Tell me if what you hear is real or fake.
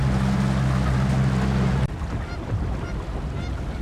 real